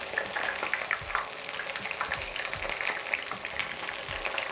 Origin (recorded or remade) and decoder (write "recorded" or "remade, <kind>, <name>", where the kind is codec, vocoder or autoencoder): recorded